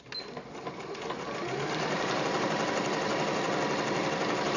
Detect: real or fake real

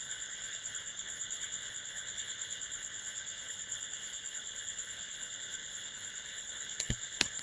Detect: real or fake fake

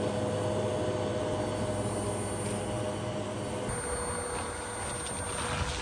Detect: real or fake real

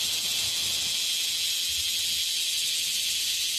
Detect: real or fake real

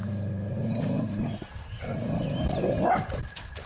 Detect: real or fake real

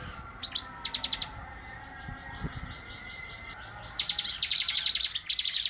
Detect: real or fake real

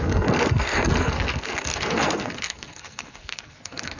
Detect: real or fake fake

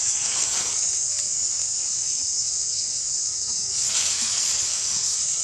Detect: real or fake fake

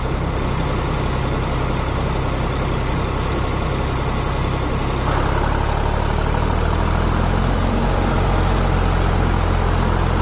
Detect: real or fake real